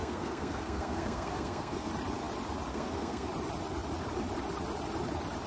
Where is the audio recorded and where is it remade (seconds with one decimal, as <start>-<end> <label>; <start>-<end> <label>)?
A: 0.0-1.9 remade; 1.9-2.7 recorded; 2.7-3.3 remade; 3.3-5.5 recorded